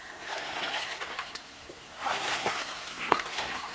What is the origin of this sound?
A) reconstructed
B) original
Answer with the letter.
A